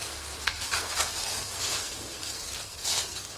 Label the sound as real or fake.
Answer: fake